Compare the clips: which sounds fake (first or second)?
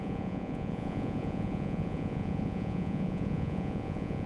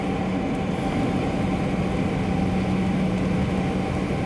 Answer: first